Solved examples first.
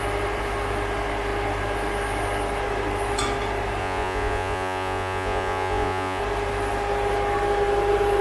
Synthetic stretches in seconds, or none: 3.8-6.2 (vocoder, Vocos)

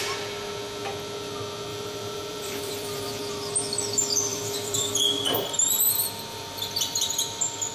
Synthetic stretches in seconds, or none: 1.7-3.2 (vocoder, BigVGAN v2); 4.3-5.0; 6.3-7.1

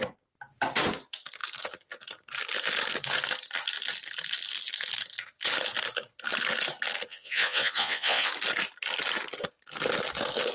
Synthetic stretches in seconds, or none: 7.1-8.3 (vocoder, Vocos)

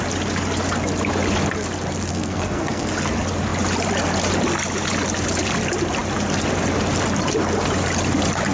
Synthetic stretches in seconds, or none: 2.1-2.9 (codec, SNAC)

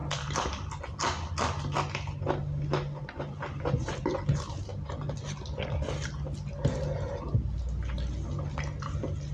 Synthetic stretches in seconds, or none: none

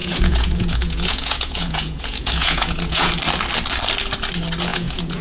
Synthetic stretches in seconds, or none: 0.0-3.1 (vocoder, Vocos); 4.7-5.2

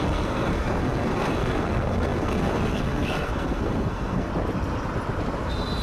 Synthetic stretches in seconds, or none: 0.0-4.3 (codec, SNAC)

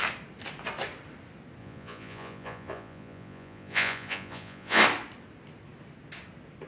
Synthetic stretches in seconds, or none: 1.6-4.8 (vocoder, Vocos)